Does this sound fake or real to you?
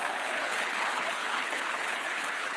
fake